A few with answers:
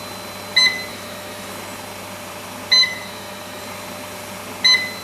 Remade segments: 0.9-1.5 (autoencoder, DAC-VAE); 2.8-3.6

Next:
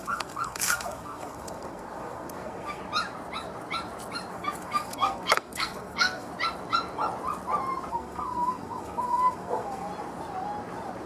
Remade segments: 0.0-2.8 (codec, SNAC); 4.3-6.3; 7.9-9.9

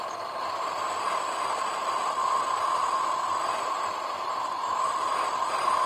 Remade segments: none

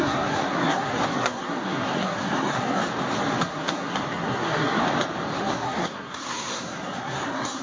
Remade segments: 0.0-2.8 (codec, SNAC); 3.4-4.8; 5.4-7.6

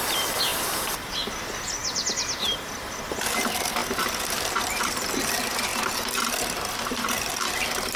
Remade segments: 0.0-0.5 (vocoder, BigVGAN v2); 1.1-1.8; 2.4-3.8; 4.8-5.7; 7.3-8.0